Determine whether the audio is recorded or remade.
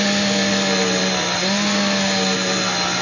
recorded